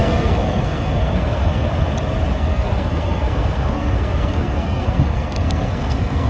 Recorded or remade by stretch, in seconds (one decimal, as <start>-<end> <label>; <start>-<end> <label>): 0.0-1.7 remade; 1.7-2.3 recorded; 2.3-6.3 remade